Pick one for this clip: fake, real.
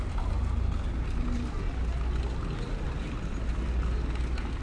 real